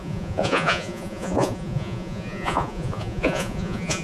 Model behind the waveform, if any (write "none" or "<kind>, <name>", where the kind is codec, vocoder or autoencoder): vocoder, Vocos